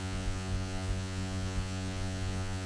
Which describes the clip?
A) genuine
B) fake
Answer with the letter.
B